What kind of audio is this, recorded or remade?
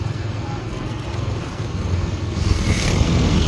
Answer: remade